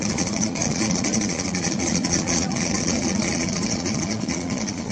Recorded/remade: remade